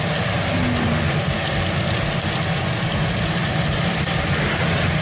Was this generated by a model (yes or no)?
no